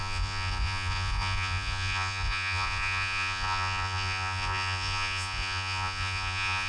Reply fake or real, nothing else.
fake